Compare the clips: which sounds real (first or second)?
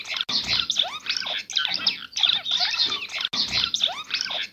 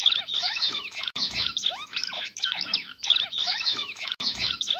first